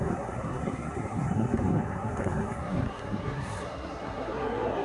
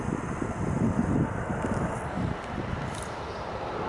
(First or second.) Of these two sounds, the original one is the second